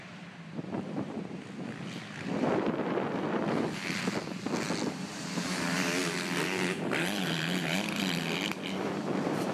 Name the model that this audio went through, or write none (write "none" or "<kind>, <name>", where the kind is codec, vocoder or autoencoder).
vocoder, BigVGAN v2